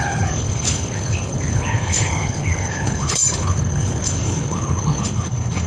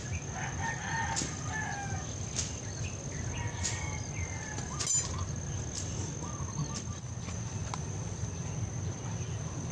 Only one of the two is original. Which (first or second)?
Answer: second